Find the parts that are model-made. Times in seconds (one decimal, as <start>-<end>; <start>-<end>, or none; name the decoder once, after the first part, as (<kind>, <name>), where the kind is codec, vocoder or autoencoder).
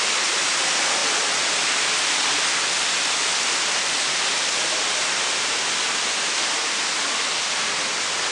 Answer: none